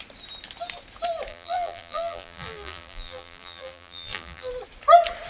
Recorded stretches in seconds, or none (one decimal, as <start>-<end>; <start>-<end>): 0.0-1.3; 4.5-5.3